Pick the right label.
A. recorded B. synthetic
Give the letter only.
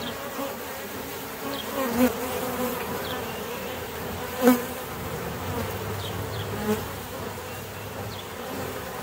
B